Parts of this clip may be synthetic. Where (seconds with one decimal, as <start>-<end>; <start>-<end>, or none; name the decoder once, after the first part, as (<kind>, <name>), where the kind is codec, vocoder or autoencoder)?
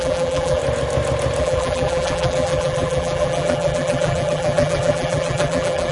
0.0-0.6 (vocoder, BigVGAN v2); 1.4-5.9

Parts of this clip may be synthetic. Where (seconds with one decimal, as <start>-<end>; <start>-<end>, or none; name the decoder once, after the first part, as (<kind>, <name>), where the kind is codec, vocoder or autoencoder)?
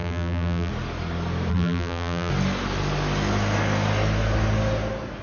0.0-0.7 (vocoder, BigVGAN v2); 1.5-2.3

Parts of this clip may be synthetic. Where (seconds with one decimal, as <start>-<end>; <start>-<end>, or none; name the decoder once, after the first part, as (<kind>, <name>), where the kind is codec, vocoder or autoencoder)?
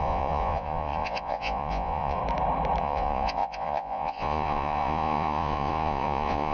0.0-2.2 (vocoder, Vocos); 2.8-6.5